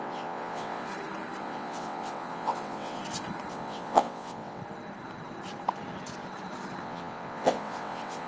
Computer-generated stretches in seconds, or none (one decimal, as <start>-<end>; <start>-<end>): 0.0-0.9; 1.4-3.0; 3.5-4.6; 6.8-8.3